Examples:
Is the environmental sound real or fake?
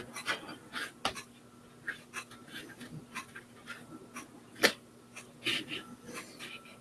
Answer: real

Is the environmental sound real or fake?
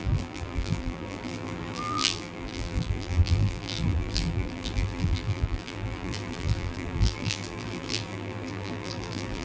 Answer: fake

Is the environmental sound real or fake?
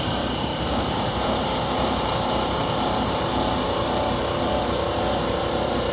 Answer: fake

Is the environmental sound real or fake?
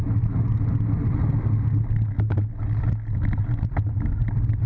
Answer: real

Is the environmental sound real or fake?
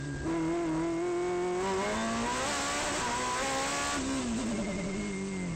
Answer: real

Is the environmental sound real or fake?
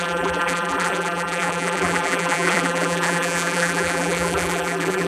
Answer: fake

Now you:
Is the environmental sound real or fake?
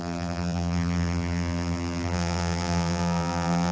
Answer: fake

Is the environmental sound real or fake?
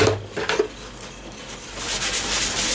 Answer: real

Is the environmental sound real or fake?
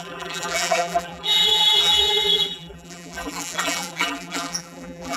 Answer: fake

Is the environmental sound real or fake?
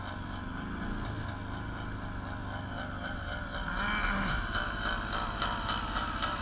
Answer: real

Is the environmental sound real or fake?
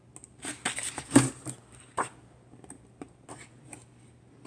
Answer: real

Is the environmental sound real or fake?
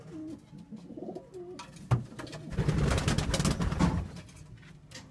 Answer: real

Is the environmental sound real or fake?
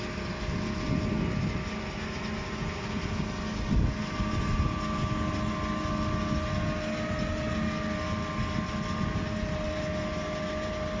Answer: real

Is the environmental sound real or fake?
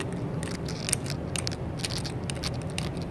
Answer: real